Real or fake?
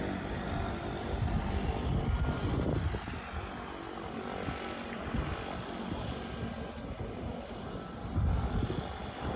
real